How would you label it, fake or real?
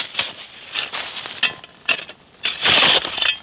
real